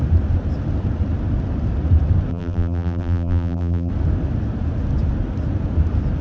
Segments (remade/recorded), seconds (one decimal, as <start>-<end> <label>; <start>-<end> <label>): 0.0-2.3 recorded; 2.3-3.9 remade; 3.9-6.2 recorded